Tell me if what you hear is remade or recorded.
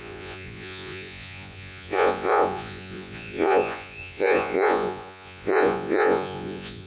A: remade